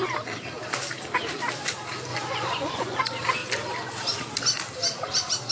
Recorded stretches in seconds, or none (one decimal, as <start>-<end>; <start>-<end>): 0.0-2.1; 3.0-5.5